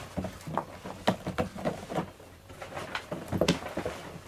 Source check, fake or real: real